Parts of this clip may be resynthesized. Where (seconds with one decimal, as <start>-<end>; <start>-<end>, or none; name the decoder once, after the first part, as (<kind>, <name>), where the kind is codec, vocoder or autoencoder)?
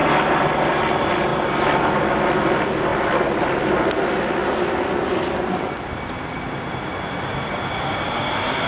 0.0-0.5 (vocoder, BigVGAN v2); 1.3-1.9